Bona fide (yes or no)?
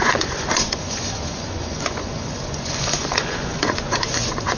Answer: no